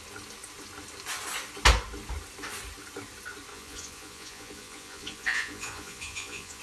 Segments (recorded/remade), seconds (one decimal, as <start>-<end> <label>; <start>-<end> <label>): 0.0-3.5 recorded; 3.5-6.6 remade